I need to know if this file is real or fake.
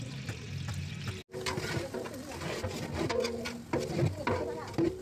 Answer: real